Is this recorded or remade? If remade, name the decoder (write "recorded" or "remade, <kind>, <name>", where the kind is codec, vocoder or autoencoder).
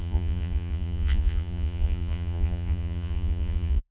remade, vocoder, Vocos